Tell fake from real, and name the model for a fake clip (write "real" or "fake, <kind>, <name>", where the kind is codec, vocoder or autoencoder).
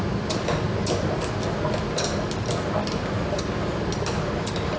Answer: real